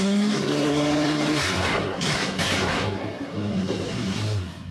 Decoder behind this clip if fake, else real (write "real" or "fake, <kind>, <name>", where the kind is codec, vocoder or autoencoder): fake, codec, SNAC